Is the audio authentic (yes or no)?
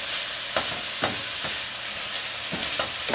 yes